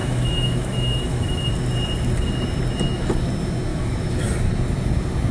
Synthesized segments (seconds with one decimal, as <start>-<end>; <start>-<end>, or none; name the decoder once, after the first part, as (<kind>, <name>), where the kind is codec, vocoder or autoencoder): 0.0-1.5 (autoencoder, DAC-VAE); 3.7-4.2